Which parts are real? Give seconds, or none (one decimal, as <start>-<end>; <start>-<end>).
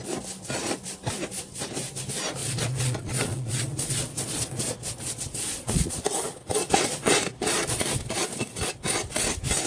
0.0-2.4; 6.0-6.6; 8.7-9.7